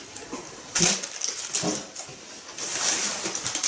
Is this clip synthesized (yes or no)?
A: no